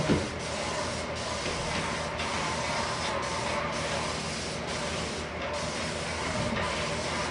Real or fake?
real